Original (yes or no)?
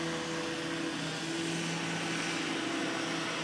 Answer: yes